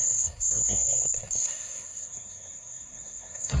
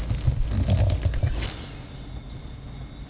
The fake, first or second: first